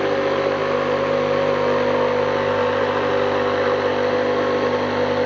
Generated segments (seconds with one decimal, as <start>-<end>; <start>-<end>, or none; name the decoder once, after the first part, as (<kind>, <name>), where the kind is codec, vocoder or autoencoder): 0.0-0.6 (vocoder, BigVGAN v2); 3.1-3.9